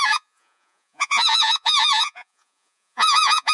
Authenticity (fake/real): fake